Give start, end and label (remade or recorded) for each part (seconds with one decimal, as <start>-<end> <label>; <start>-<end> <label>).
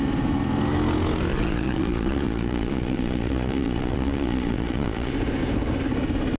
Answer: 0.0-1.3 recorded; 1.3-5.1 remade; 5.1-6.4 recorded